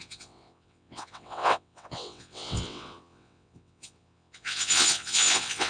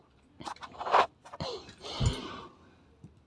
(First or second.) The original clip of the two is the second